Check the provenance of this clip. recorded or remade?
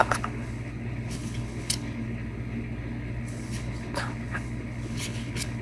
remade